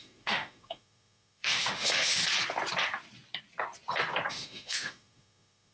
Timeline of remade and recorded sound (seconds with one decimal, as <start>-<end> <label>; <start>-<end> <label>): 0.0-2.2 remade; 2.2-4.3 recorded; 4.3-5.7 remade